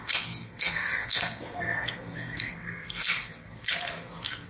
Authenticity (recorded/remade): remade